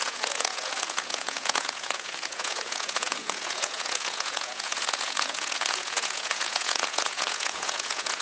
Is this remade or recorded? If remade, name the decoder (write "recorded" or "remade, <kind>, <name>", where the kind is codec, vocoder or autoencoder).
remade, vocoder, Vocos